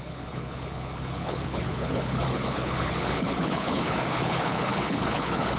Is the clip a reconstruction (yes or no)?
yes